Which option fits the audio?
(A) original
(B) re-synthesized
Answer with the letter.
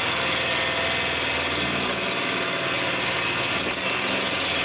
A